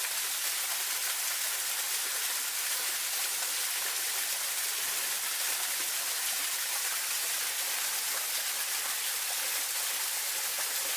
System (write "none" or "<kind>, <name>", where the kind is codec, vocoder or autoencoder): none